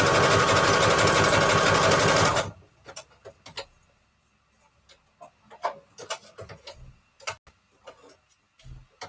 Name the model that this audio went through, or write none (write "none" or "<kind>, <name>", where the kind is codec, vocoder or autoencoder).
none